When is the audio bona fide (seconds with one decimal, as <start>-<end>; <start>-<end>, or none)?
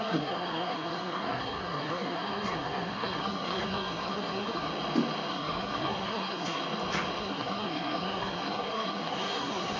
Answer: 4.7-5.3; 6.6-7.2